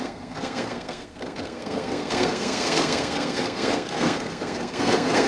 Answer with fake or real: fake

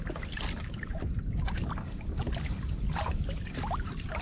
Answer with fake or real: real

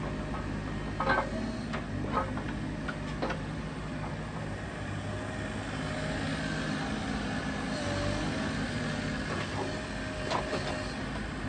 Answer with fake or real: real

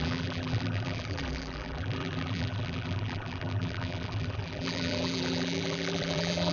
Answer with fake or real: fake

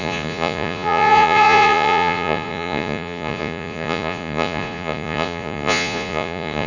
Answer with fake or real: fake